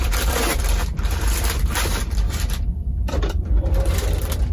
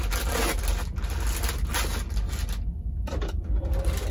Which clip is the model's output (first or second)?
first